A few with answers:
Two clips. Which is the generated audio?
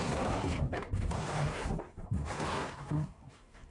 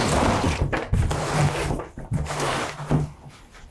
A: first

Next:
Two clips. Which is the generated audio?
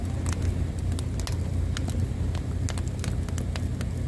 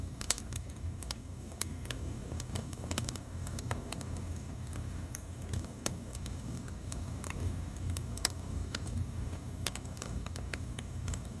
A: second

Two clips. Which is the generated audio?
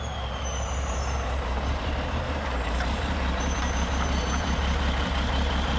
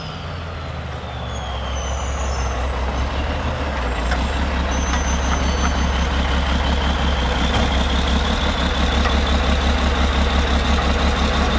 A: first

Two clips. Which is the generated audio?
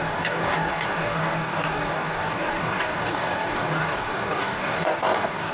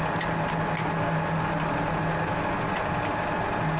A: first